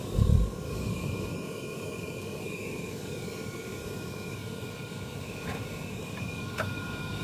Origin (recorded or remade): remade